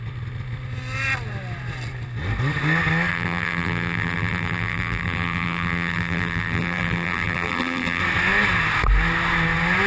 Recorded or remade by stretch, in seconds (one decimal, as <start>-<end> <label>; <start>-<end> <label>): 0.0-3.1 recorded; 3.1-8.0 remade; 8.0-9.9 recorded